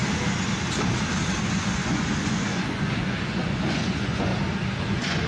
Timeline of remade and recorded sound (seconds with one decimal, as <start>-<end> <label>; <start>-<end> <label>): 0.0-1.4 recorded; 1.4-4.3 remade; 4.3-4.8 recorded; 4.8-5.3 remade